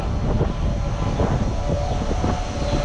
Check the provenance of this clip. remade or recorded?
recorded